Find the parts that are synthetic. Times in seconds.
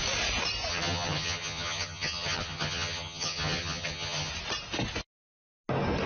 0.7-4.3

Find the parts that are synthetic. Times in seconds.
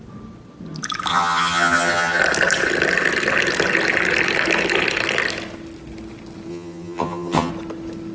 1.1-2.2; 6.5-7.5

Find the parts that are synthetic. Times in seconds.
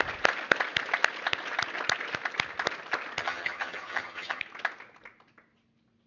3.2-4.4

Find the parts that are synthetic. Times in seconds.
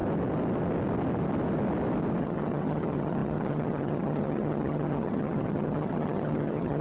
2.2-6.8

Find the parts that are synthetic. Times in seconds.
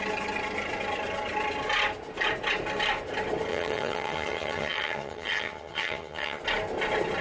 3.5-6.4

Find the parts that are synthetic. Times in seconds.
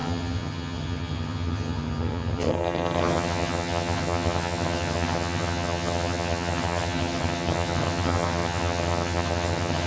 0.0-9.9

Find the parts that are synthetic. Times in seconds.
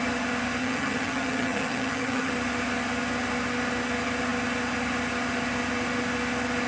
0.6-2.3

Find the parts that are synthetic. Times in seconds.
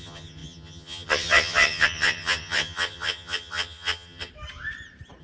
0.0-4.3